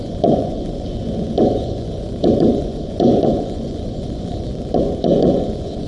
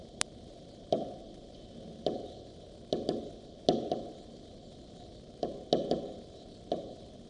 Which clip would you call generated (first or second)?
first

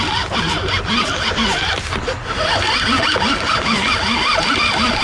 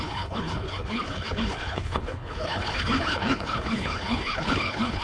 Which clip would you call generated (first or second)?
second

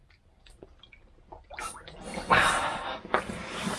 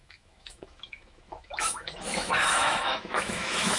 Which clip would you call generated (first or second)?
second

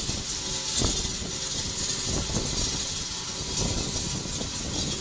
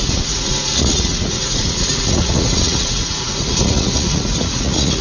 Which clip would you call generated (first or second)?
second